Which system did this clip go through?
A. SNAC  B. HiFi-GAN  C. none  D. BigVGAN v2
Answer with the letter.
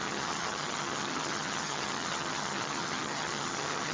B